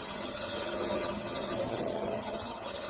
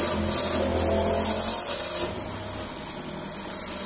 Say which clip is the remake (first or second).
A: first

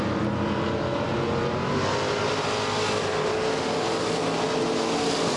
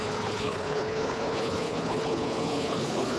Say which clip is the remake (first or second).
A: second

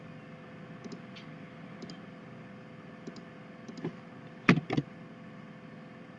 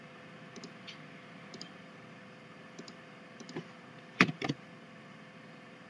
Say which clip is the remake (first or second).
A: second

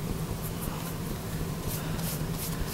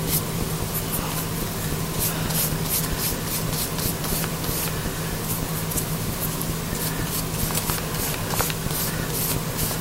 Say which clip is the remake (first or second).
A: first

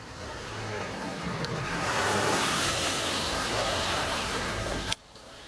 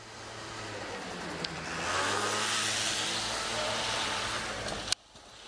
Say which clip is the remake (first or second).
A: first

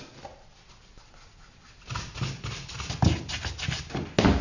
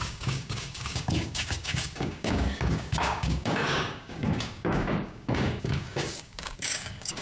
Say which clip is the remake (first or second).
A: second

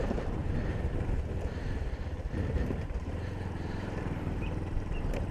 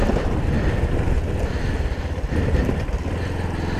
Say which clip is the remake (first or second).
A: first